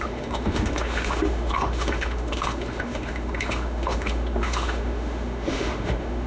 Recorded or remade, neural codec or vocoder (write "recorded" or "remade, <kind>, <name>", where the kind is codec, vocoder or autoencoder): remade, autoencoder, DAC-VAE